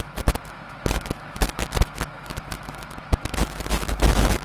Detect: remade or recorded remade